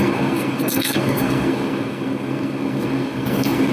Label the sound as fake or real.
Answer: fake